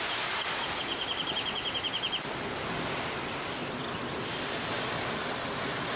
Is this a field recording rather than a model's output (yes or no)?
yes